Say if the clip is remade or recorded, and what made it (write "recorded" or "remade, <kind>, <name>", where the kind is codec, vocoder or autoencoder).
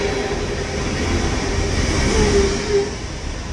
recorded